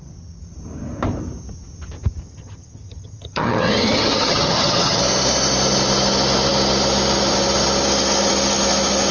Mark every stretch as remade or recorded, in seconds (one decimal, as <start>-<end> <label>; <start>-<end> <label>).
0.0-2.2 recorded; 2.2-5.0 remade; 5.0-9.1 recorded